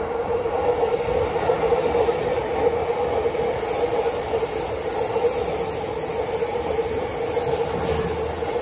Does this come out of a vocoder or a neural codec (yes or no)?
no